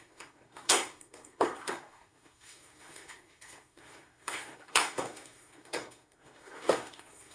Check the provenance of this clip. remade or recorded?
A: remade